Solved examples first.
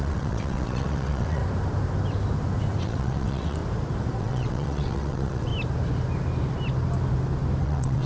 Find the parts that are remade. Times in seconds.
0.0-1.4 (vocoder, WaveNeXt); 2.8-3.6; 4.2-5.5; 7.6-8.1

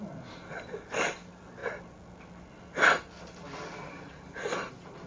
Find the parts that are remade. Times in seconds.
none

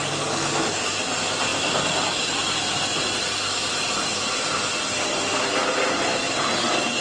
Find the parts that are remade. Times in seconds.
none

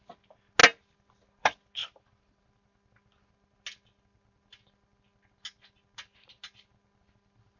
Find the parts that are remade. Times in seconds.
1.8-2.4 (vocoder, BigVGAN v2)

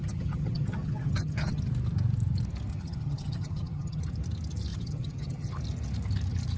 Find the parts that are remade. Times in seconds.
0.0-1.6 (vocoder, HiFi-GAN); 2.7-4.0; 4.7-5.5